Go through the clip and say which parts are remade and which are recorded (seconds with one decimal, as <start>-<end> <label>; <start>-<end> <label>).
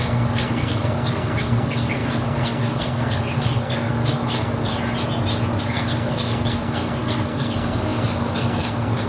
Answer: 0.0-4.7 remade; 4.7-5.6 recorded; 5.6-9.1 remade